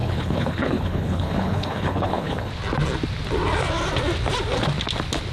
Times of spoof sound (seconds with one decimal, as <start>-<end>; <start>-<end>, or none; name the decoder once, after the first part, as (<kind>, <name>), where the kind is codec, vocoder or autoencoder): 0.0-2.5 (codec, HILCodec)